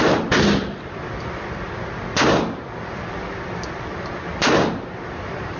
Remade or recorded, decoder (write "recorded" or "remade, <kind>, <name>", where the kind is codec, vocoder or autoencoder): recorded